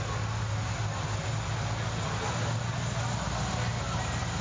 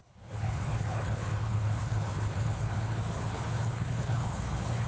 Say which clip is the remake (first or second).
second